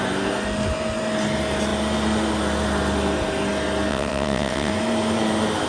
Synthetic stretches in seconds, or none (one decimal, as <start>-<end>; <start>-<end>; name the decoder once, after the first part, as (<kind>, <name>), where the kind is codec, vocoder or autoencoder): 3.9-4.7 (vocoder, WaveNeXt)